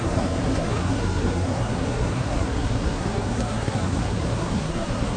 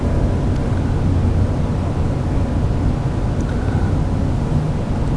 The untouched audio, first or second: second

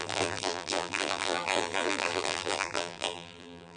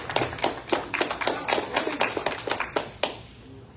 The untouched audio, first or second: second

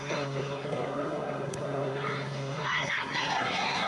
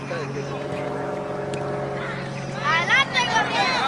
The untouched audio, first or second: second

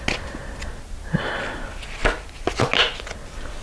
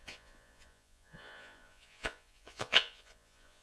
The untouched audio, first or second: first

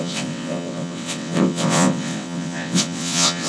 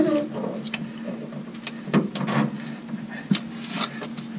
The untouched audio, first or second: second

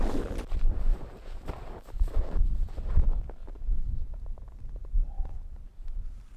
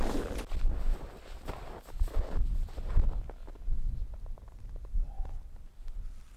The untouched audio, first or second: second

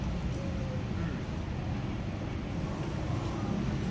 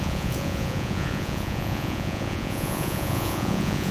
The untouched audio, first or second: first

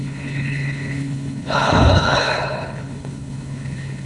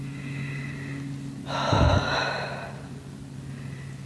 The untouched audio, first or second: second